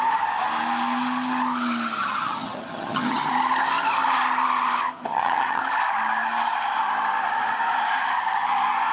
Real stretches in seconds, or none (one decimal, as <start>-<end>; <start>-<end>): 0.0-2.0; 3.3-5.1; 5.6-8.9